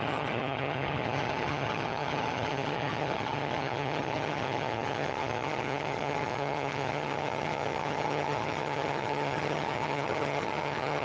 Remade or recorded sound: remade